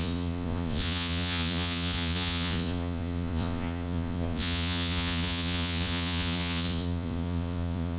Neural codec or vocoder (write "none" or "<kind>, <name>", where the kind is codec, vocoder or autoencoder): vocoder, Vocos